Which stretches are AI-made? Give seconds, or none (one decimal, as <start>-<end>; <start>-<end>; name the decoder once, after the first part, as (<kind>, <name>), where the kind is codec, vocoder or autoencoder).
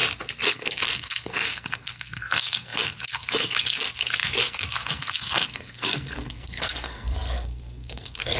0.5-8.4 (codec, SNAC)